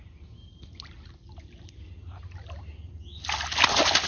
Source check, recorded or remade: recorded